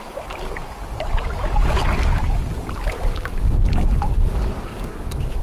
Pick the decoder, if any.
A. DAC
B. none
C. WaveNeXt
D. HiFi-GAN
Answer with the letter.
A